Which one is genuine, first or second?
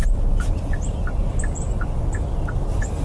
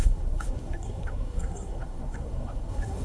first